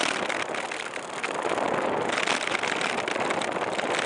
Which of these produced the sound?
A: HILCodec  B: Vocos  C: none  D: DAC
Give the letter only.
C